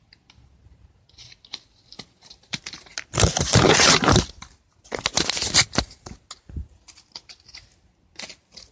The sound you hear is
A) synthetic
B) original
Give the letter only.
B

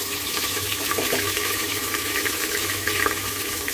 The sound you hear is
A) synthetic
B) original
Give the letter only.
A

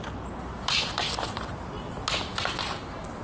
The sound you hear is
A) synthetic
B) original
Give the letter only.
B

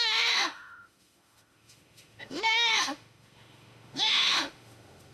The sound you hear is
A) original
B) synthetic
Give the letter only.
B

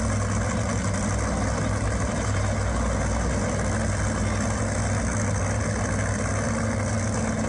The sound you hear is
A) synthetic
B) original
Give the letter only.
B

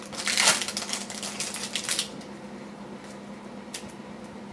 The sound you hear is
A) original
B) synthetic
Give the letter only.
A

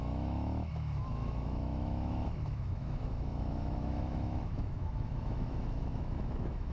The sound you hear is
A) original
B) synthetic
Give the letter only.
B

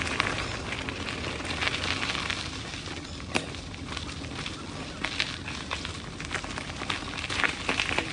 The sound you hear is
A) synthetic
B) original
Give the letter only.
B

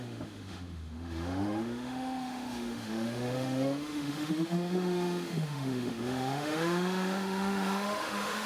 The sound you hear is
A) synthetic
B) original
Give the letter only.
A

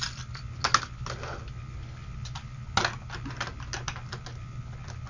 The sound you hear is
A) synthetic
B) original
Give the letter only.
B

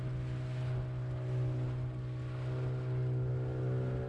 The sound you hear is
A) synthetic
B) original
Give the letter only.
B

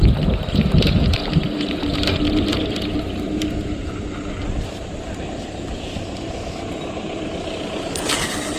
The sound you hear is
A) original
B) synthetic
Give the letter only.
A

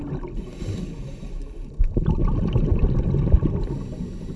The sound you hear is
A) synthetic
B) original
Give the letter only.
B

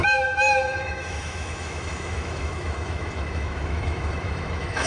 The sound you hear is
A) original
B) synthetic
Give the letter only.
B